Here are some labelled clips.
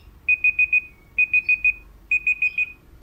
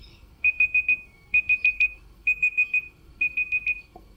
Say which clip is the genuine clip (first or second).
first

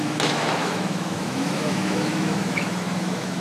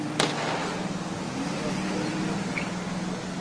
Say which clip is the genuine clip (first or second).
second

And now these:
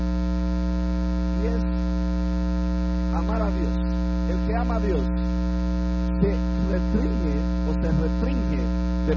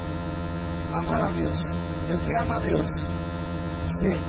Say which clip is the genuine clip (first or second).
first